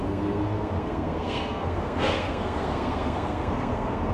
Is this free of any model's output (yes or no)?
no